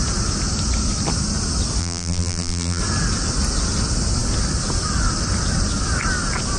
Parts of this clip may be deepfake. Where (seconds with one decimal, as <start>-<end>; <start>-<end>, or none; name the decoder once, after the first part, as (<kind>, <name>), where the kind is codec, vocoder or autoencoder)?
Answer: 1.8-2.8 (vocoder, BigVGAN v2)